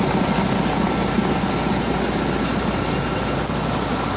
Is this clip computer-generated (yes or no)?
no